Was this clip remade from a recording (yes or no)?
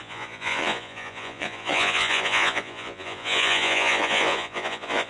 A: yes